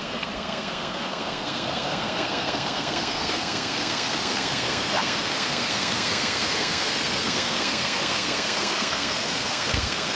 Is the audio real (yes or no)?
no